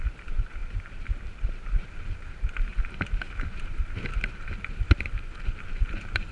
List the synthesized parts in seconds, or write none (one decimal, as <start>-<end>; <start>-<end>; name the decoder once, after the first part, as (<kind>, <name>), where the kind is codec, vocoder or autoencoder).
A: 0.0-2.7 (vocoder, BigVGAN v2); 3.5-4.1; 4.7-6.3